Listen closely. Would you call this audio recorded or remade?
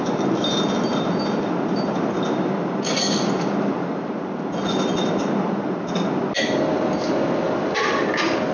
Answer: recorded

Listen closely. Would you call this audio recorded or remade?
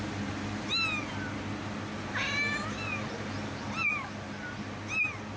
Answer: recorded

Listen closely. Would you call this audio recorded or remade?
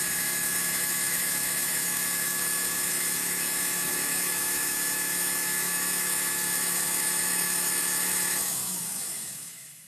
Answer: remade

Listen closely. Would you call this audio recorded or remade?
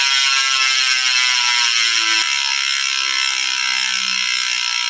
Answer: recorded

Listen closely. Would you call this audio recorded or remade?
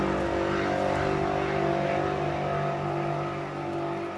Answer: recorded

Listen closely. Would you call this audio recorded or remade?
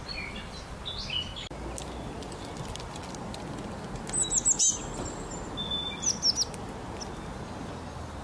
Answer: recorded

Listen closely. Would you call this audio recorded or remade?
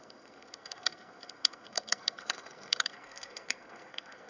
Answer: remade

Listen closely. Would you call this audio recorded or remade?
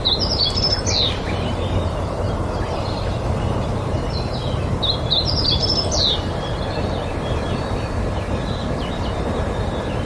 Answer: remade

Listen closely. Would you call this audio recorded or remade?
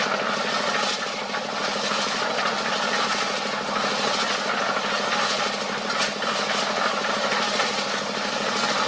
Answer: recorded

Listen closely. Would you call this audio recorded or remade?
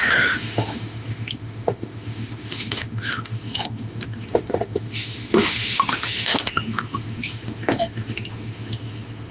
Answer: remade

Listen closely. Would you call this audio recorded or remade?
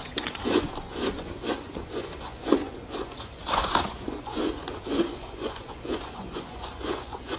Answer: remade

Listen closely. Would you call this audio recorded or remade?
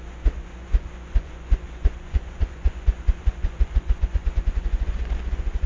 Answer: remade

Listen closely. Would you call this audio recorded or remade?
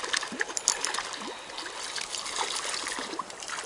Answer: recorded